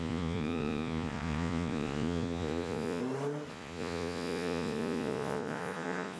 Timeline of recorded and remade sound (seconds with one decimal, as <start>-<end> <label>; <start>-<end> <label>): 0.0-3.0 remade; 3.0-3.5 recorded; 3.5-6.2 remade